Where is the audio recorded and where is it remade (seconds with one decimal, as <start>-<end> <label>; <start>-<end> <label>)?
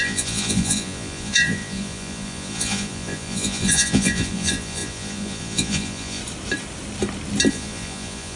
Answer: 0.0-6.2 remade; 6.2-7.5 recorded; 7.5-8.4 remade